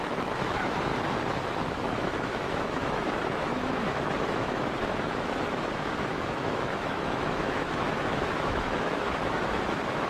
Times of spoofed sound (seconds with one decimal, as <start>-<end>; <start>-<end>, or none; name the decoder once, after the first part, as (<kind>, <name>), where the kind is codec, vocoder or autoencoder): 0.0-0.9 (autoencoder, DAC-VAE); 1.7-10.1